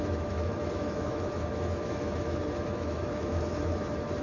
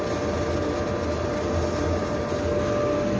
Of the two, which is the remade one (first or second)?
first